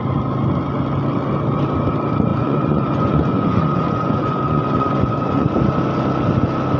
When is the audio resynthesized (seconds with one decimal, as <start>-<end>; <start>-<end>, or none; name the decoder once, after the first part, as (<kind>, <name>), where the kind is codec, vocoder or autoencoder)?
2.3-5.5 (vocoder, Vocos)